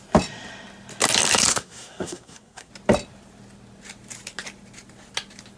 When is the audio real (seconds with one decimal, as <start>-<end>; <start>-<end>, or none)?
0.0-1.5; 2.7-5.6